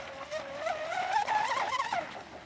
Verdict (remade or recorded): recorded